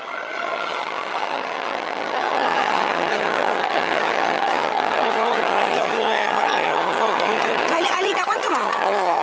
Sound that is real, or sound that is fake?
fake